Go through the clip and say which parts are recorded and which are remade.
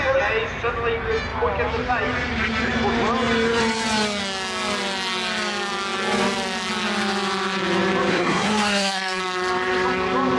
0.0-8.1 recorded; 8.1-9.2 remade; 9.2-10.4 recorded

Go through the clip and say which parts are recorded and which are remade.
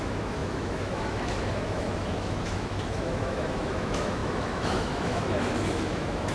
0.0-6.3 remade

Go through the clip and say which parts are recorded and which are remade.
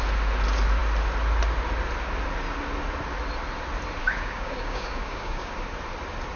0.0-4.0 recorded; 4.0-5.5 remade; 5.5-6.4 recorded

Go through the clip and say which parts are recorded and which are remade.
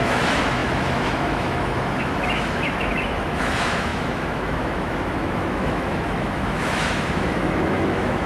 0.0-8.3 remade